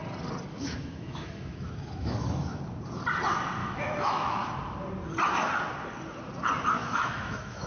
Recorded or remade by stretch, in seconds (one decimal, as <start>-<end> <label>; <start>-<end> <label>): 0.0-0.5 recorded; 0.5-2.6 remade; 2.6-3.6 recorded; 3.6-4.5 remade; 4.5-6.8 recorded; 6.8-7.7 remade